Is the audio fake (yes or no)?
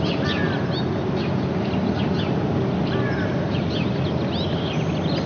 no